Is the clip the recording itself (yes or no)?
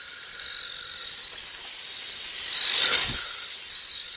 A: yes